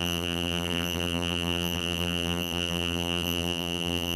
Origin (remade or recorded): remade